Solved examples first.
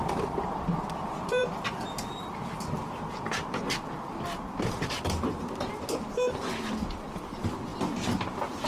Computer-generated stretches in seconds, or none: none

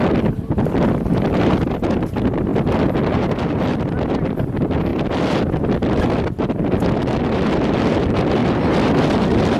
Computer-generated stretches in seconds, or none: 2.5-3.6 (vocoder, BigVGAN v2); 4.9-6.4; 8.4-9.6

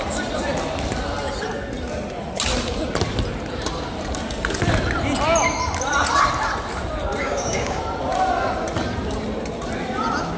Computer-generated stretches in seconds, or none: 7.2-7.8 (codec, DAC)

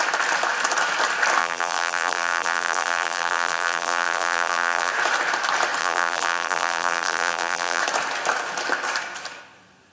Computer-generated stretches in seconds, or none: 1.4-4.9 (vocoder, BigVGAN v2); 5.8-7.8